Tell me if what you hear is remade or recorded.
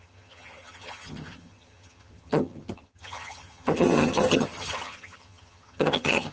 remade